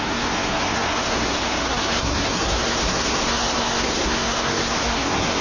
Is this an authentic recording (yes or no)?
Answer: no